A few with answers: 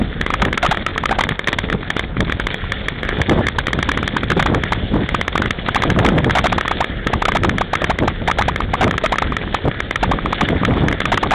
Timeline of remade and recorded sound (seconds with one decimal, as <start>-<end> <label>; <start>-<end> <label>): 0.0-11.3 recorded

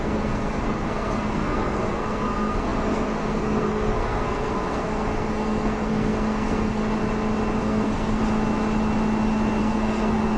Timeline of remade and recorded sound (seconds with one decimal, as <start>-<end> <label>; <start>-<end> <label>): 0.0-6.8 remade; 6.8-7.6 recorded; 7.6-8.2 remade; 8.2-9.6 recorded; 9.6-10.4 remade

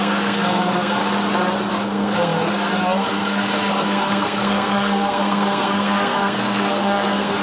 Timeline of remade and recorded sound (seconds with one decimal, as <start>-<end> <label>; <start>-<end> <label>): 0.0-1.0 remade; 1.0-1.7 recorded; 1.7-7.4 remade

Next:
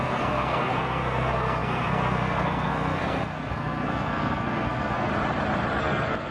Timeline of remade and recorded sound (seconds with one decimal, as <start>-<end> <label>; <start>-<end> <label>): 0.0-5.1 remade; 5.1-5.8 recorded; 5.8-6.3 remade

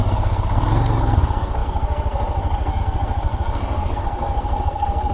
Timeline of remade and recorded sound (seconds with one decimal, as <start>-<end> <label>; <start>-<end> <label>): 0.0-5.1 remade